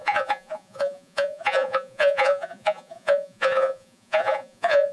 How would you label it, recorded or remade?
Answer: remade